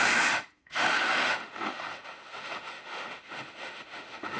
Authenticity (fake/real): fake